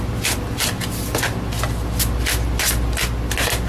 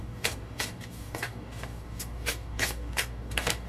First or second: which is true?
first